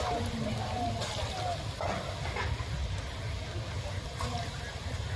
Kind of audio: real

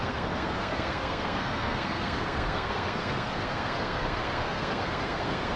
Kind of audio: fake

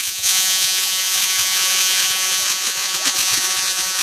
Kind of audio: fake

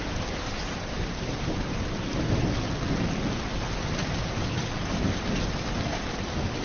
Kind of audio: real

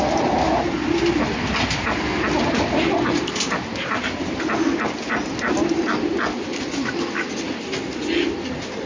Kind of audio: real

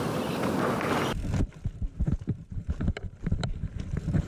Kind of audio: real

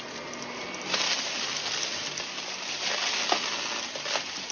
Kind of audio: real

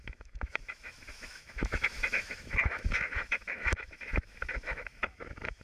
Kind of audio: fake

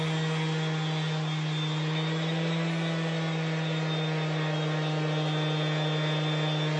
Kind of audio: real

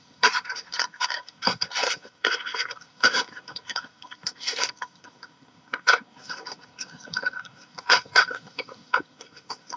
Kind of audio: fake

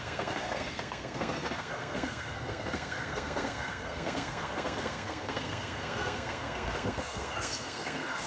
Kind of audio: fake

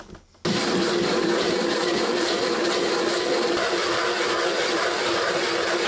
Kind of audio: real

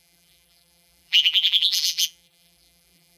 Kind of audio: fake